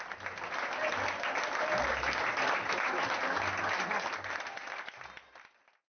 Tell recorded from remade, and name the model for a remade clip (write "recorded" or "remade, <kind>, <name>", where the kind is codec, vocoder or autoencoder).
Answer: recorded